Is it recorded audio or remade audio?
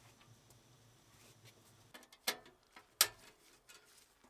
recorded